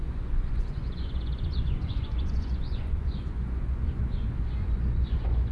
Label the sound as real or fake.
fake